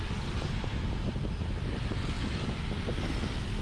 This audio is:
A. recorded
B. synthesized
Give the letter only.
A